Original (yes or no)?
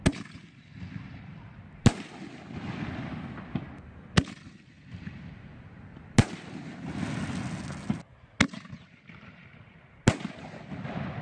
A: yes